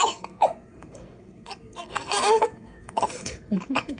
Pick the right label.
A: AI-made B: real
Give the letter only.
A